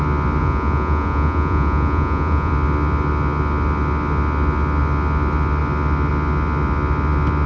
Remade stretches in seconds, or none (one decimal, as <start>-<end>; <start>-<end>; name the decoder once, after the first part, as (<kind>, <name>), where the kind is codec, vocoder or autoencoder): 0.4-2.5 (vocoder, Vocos)